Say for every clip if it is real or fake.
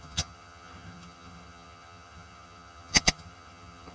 fake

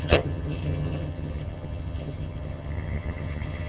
fake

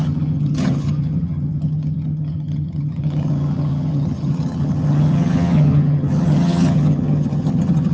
fake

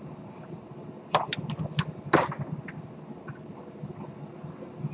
real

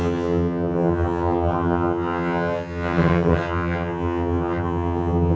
fake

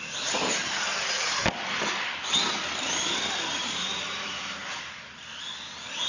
real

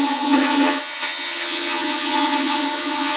fake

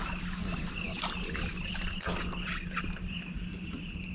real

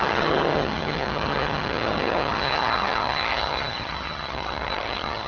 fake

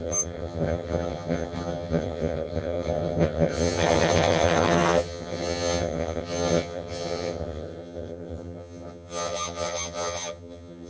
fake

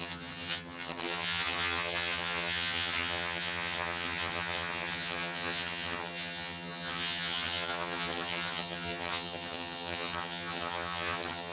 fake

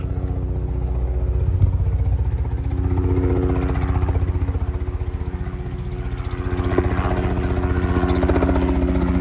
real